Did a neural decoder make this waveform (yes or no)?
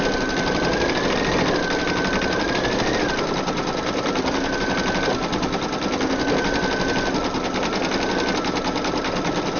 no